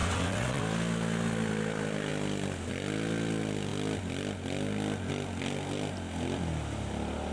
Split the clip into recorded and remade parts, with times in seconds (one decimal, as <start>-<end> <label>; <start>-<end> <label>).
0.0-0.6 remade; 0.6-7.3 recorded